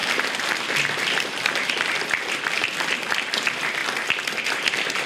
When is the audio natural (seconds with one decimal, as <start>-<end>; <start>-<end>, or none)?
3.8-4.4